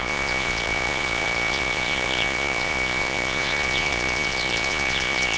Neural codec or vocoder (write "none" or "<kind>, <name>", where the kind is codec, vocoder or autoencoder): vocoder, Vocos